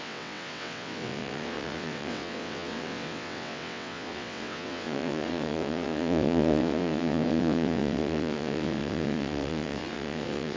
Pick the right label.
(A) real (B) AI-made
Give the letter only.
B